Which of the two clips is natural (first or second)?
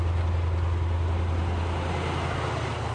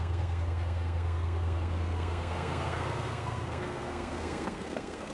first